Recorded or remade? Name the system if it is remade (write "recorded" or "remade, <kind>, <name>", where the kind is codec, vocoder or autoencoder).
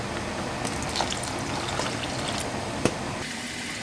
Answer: recorded